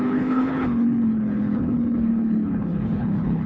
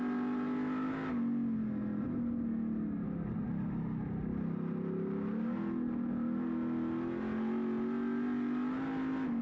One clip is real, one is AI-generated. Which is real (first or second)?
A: second